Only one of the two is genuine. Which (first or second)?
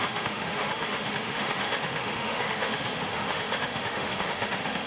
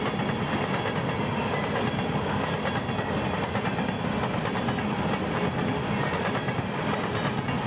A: second